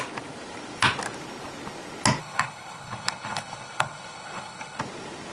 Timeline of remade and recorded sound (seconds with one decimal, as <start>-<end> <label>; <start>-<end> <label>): 0.0-2.2 recorded; 2.2-4.8 remade; 4.8-5.3 recorded